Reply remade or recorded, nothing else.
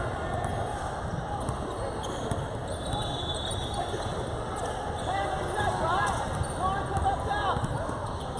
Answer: recorded